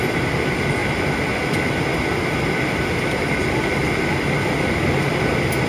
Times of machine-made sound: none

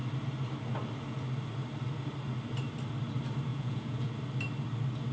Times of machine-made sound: 3.5-4.1 (vocoder, Vocos)

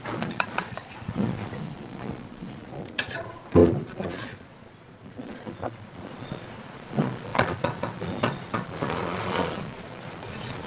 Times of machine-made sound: 0.0-10.7 (vocoder, Vocos)

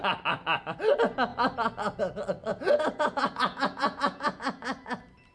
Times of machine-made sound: 2.5-4.4 (vocoder, Vocos)